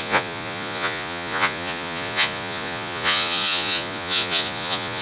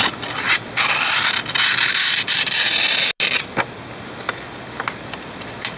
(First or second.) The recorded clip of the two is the second